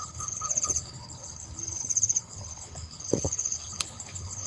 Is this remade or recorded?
remade